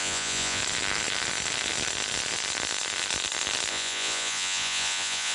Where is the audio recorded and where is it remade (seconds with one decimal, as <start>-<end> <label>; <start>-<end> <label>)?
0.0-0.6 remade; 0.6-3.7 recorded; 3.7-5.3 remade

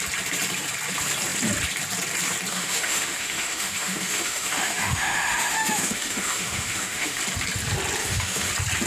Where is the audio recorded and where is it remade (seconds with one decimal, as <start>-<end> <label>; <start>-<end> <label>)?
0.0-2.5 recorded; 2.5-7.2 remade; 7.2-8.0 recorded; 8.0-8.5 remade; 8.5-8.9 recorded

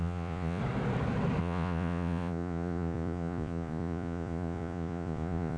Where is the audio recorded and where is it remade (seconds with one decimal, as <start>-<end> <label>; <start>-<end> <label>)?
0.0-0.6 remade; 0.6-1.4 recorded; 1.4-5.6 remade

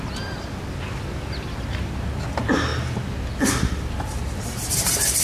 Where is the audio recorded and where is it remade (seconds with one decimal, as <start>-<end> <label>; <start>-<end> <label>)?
0.0-5.2 recorded

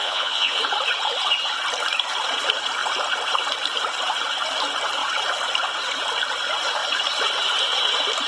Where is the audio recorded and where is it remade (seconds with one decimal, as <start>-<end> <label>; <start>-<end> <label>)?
0.0-0.6 remade; 0.6-8.3 recorded